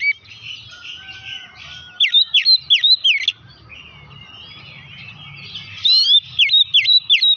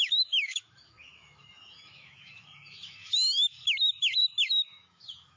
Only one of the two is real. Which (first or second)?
first